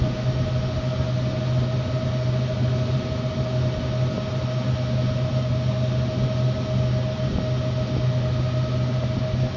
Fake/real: real